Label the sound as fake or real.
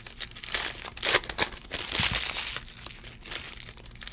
real